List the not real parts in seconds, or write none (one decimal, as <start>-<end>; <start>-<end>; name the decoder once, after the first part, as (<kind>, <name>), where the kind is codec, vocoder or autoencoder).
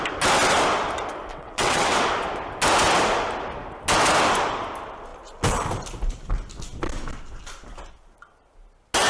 1.3-2.0 (vocoder, WaveNeXt)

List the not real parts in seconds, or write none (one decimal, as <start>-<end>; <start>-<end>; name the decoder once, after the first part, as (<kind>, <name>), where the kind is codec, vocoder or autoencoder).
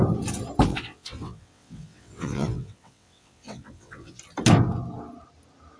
0.7-4.2 (vocoder, WaveNeXt)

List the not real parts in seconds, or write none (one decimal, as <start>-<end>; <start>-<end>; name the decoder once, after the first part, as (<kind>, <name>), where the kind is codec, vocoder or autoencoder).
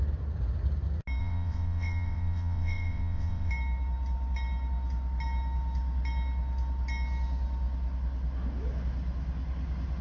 1.2-3.5 (vocoder, WaveNeXt)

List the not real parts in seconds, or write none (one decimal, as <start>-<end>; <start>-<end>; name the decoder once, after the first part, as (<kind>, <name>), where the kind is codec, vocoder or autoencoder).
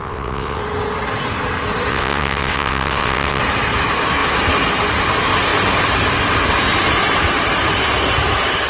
0.0-0.6 (vocoder, WaveNeXt); 1.9-3.4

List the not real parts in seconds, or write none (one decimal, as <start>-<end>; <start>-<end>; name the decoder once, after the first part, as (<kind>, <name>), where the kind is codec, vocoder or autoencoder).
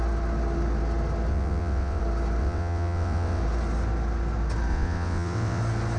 1.3-2.0 (vocoder, WaveNeXt); 2.4-3.4; 4.7-5.6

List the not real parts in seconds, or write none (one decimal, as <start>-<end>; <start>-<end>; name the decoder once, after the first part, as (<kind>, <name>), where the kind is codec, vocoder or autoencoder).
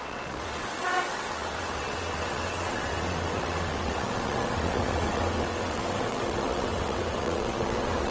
0.0-8.1 (vocoder, WaveNeXt)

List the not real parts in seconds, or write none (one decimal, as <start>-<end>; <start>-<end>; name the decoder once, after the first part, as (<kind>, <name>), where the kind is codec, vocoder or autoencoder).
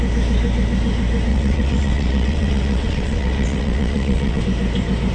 1.3-4.4 (vocoder, WaveNeXt)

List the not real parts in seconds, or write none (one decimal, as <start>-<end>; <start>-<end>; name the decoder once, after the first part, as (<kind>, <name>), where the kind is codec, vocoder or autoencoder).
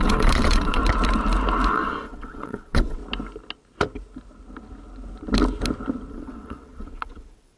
0.0-0.8 (vocoder, WaveNeXt); 1.7-3.0; 6.1-7.6